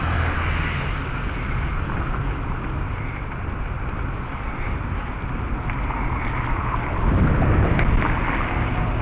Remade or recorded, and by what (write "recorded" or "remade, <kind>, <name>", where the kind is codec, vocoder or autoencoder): recorded